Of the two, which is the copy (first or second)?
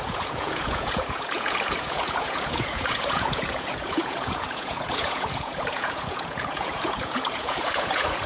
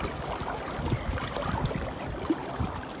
first